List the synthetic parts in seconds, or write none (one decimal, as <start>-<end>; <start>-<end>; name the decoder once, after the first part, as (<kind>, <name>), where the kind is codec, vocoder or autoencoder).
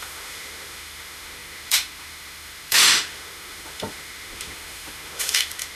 0.0-5.8 (autoencoder, DAC-VAE)